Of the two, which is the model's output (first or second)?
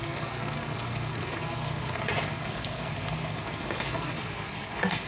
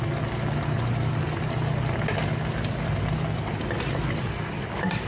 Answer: first